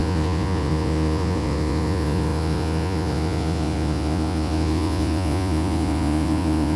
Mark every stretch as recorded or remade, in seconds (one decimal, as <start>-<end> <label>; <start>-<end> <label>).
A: 0.0-6.8 remade